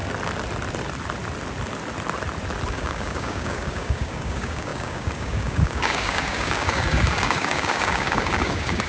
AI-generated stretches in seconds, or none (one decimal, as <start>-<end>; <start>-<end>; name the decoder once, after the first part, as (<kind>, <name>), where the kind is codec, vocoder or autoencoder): 2.7-8.9 (codec, DAC)